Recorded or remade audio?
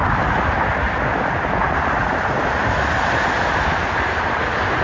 recorded